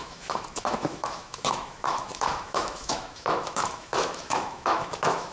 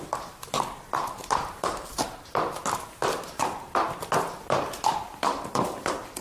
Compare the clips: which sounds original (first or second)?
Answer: second